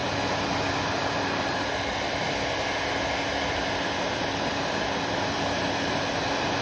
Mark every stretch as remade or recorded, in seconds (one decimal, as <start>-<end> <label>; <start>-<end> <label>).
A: 0.0-6.6 recorded